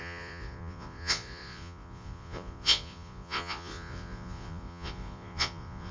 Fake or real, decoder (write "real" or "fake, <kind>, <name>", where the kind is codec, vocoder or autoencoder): fake, vocoder, Vocos